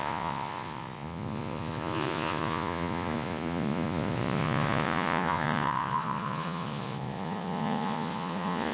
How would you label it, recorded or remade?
remade